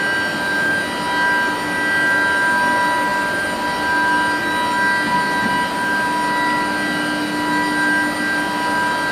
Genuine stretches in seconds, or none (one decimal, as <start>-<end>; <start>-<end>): 0.0-9.1